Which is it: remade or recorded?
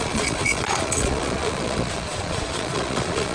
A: remade